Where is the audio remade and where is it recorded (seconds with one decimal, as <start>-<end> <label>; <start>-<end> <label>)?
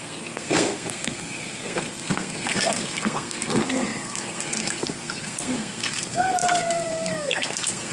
0.0-7.9 remade